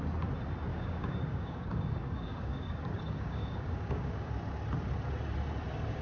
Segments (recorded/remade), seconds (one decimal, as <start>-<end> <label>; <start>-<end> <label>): 0.0-0.7 recorded; 0.7-4.3 remade; 4.3-6.0 recorded